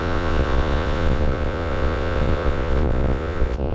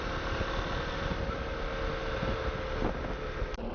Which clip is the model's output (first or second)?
first